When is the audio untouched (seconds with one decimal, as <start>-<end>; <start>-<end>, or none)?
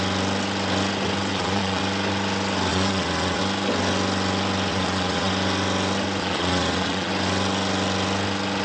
0.0-1.3; 1.8-2.7; 3.4-4.7; 5.3-6.2; 7.1-8.6